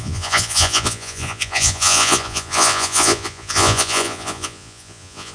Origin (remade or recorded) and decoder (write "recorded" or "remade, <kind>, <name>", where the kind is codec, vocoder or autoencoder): remade, vocoder, Vocos